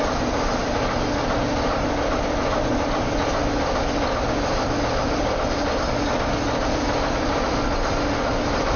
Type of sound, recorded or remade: recorded